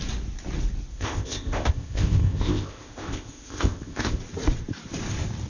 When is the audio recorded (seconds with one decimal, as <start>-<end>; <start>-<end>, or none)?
0.0-0.9; 4.2-5.5